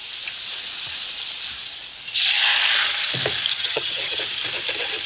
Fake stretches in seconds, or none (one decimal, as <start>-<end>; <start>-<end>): 3.5-4.2